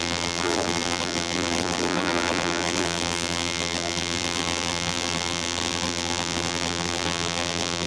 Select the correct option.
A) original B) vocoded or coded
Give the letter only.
B